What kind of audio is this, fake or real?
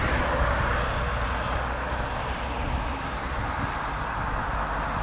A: real